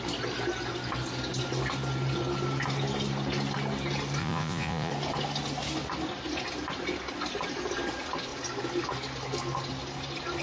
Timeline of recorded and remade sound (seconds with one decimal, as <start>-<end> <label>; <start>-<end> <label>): 0.0-4.2 recorded; 4.2-4.9 remade; 4.9-10.4 recorded